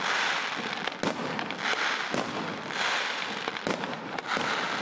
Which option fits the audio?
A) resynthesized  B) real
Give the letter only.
B